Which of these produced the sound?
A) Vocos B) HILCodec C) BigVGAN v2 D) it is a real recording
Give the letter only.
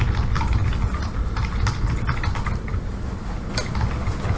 D